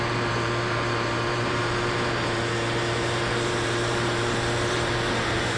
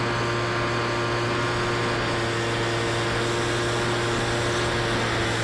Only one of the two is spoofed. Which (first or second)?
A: first